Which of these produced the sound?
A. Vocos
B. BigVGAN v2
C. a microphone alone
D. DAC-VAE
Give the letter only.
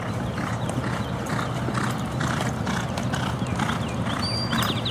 C